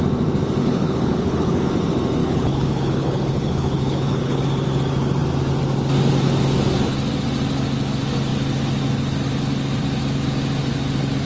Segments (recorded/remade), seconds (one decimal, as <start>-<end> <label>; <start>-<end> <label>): 0.0-0.6 recorded; 0.6-1.7 remade; 1.7-2.2 recorded; 2.2-4.4 remade; 4.4-11.2 recorded